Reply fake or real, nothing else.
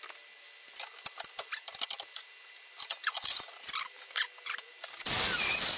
real